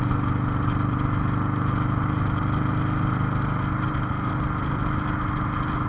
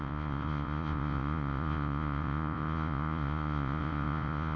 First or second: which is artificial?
second